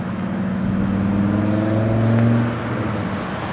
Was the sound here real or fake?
real